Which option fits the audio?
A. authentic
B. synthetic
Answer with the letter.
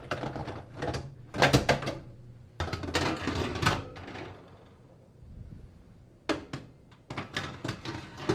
A